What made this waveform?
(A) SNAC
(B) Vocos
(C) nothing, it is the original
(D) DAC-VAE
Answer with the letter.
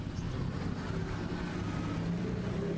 C